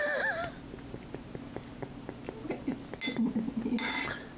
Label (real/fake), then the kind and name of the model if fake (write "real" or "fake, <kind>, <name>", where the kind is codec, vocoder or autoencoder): real